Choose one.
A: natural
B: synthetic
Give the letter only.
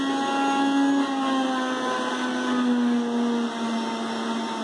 A